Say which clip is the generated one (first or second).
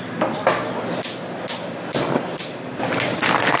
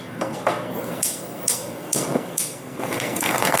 second